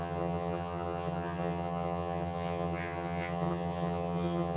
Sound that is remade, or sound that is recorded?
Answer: remade